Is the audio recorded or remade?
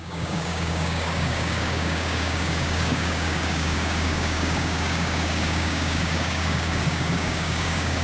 remade